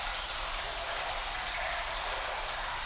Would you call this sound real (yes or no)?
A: no